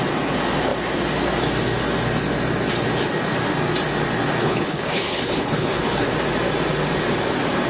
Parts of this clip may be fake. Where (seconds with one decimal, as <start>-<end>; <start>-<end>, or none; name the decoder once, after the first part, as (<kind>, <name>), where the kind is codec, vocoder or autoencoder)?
4.4-6.1 (codec, HILCodec)